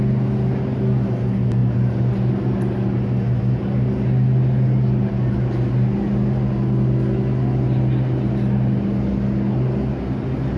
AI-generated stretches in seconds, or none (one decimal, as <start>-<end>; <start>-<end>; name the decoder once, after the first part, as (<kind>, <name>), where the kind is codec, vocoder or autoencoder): none